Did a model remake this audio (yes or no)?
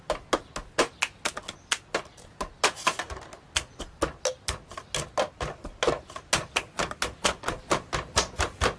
no